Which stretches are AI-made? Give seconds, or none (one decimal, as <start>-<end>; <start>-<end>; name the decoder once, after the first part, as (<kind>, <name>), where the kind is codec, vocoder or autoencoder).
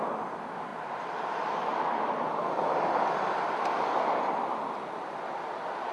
0.7-4.2 (vocoder, BigVGAN v2)